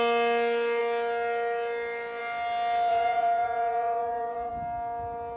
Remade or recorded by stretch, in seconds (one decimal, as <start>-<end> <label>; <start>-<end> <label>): 0.0-2.9 recorded; 2.9-4.5 remade; 4.5-5.4 recorded